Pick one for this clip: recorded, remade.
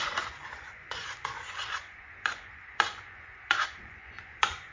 remade